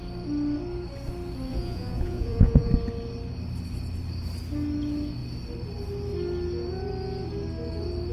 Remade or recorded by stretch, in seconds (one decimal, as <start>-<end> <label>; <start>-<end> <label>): 0.0-1.5 recorded; 1.5-2.7 remade; 2.7-8.1 recorded